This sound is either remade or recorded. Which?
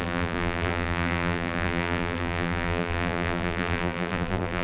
remade